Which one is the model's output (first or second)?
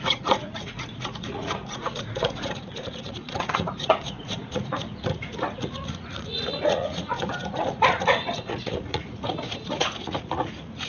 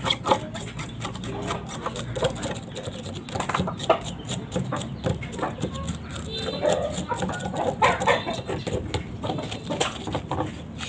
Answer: first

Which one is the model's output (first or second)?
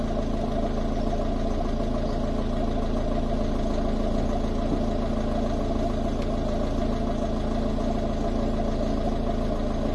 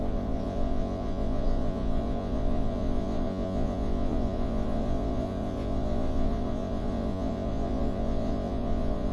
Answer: second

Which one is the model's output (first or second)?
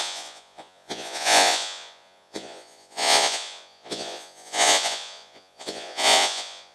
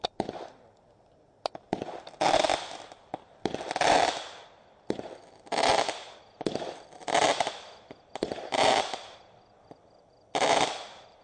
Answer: first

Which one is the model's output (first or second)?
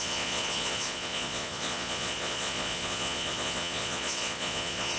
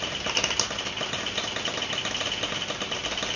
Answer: first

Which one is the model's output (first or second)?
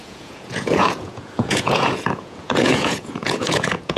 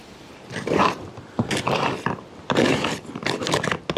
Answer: first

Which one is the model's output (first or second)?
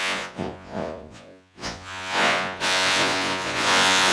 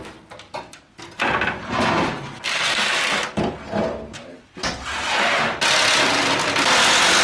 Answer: first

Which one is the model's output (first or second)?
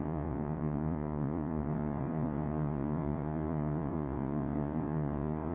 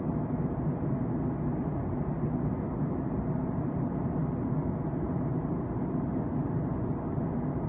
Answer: first